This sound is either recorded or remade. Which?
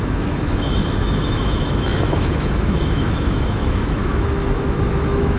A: remade